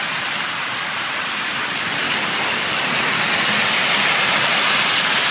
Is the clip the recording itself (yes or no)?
yes